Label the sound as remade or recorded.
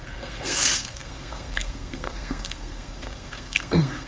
remade